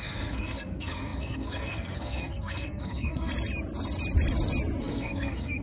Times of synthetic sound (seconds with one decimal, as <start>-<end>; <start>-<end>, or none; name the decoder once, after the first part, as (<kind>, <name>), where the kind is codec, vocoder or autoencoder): 0.0-3.3 (codec, SNAC); 4.8-5.6